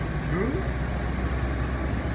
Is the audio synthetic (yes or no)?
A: no